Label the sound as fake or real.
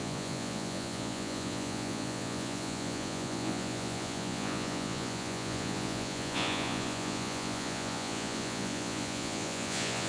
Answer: fake